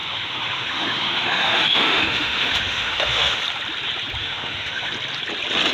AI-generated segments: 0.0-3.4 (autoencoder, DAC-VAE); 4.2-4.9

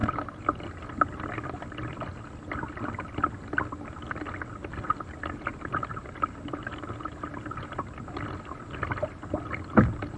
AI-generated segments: none

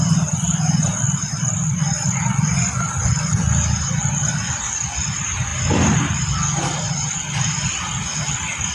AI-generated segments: 0.0-8.7 (vocoder, BigVGAN v2)

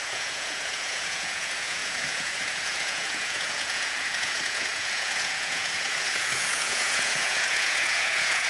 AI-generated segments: 0.0-8.5 (vocoder, Vocos)